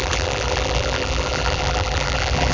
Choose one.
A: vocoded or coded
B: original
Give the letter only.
A